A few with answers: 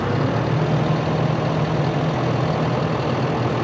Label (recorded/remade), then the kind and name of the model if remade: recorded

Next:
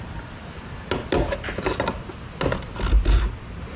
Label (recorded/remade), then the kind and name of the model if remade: recorded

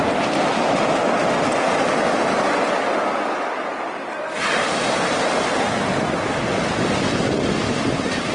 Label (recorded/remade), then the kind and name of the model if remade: recorded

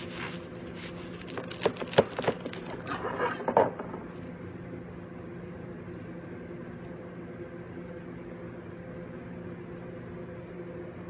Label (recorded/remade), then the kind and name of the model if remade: recorded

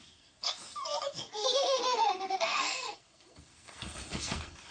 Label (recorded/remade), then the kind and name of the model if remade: remade, codec, SNAC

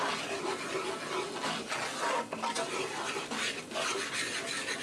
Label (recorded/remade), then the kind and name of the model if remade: recorded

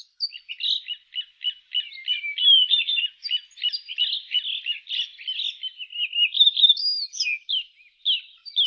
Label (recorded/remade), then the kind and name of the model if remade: recorded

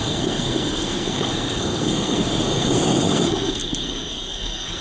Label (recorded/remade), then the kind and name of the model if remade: remade, codec, SNAC